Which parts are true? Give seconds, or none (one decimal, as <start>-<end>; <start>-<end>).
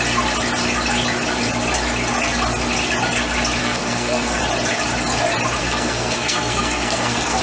0.0-3.6; 4.4-5.6